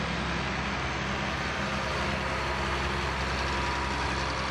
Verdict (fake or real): real